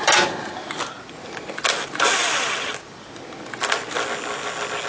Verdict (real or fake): real